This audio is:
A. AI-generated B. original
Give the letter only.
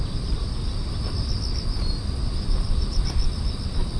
B